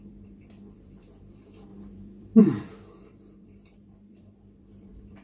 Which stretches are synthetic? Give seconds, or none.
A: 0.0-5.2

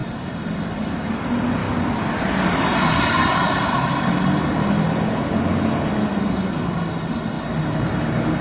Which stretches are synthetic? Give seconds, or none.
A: 0.0-1.2; 3.4-4.2

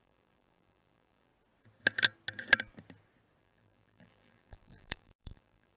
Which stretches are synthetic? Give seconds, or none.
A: 0.0-1.3; 3.4-5.8